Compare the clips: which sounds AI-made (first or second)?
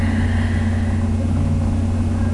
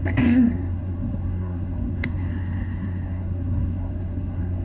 second